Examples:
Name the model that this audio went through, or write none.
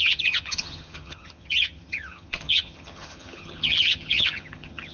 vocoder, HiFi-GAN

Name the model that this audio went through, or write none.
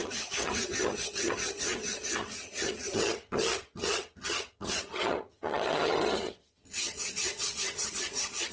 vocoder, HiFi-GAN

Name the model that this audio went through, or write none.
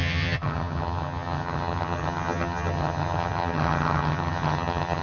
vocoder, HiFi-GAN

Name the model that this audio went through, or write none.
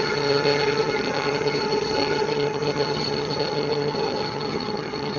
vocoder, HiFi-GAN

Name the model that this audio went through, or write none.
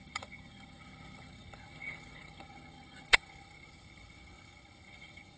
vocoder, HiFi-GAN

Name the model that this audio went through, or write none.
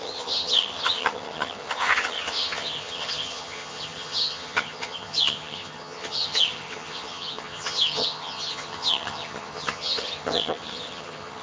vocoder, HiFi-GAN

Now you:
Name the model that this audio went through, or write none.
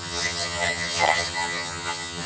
vocoder, HiFi-GAN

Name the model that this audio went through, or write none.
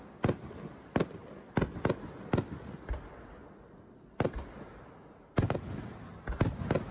none